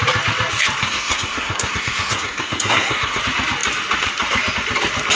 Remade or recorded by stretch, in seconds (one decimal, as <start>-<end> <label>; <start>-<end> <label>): 0.0-0.8 recorded; 0.8-3.2 remade; 3.2-5.2 recorded